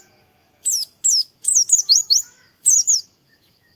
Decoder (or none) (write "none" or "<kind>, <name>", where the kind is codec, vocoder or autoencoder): autoencoder, DAC-VAE